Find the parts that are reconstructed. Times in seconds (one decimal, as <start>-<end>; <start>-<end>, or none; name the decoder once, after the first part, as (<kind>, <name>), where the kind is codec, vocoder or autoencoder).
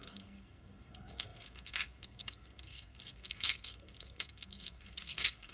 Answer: 0.0-5.5 (codec, SNAC)